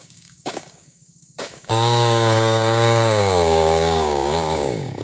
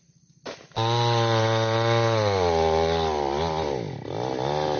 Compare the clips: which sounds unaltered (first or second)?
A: second